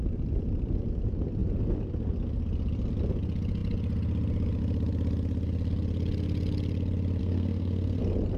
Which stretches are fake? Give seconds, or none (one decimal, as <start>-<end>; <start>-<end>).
7.2-8.0